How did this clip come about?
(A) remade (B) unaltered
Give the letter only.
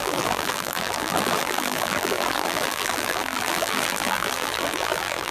A